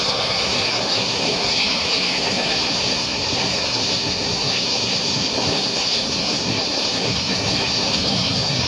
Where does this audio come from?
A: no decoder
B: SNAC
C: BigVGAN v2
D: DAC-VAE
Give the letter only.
B